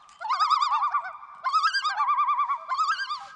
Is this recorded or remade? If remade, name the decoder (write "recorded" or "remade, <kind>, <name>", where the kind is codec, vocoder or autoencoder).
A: recorded